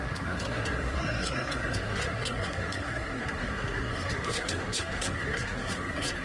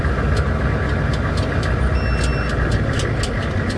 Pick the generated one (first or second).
first